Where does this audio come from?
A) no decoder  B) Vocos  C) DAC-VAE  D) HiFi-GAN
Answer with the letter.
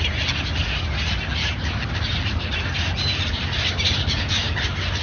A